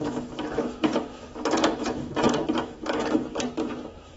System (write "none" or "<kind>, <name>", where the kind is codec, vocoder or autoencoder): autoencoder, DAC-VAE